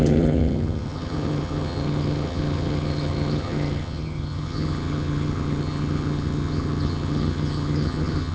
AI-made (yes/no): yes